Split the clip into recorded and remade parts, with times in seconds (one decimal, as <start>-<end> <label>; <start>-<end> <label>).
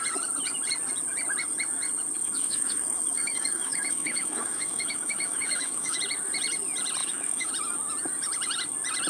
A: 0.0-2.2 recorded; 2.2-6.0 remade; 6.0-7.0 recorded; 7.0-7.5 remade; 7.5-9.1 recorded